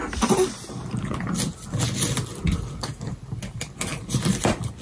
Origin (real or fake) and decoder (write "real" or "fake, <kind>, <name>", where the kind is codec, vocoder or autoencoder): real